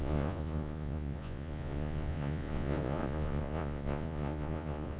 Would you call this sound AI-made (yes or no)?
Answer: yes